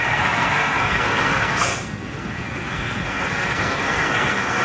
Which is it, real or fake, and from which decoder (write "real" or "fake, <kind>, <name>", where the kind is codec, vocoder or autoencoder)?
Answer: fake, codec, SNAC